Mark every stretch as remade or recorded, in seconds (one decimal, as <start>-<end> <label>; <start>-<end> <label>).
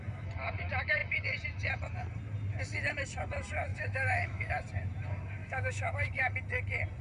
0.0-3.7 recorded; 3.7-4.5 remade; 4.5-5.4 recorded; 5.4-6.3 remade; 6.3-7.0 recorded